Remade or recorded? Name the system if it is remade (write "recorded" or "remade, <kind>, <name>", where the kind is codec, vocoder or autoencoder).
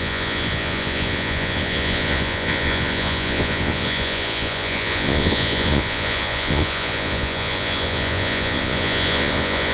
remade, vocoder, Vocos